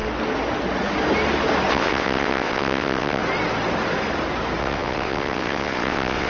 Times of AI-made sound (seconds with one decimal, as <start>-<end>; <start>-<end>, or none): 1.7-3.2; 4.6-6.3